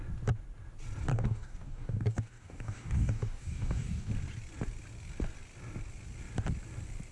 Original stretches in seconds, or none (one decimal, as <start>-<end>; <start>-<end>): 0.0-1.1; 4.1-7.1